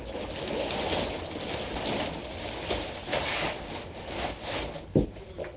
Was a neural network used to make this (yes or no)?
no